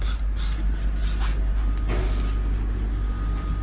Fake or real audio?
real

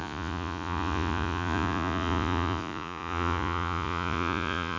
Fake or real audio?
fake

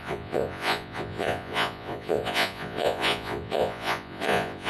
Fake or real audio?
fake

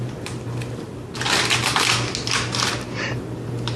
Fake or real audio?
real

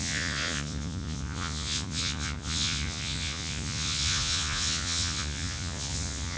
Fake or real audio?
fake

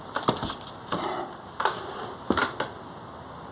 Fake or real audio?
real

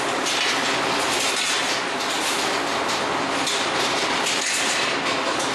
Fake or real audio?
real